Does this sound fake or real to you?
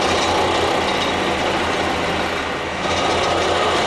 real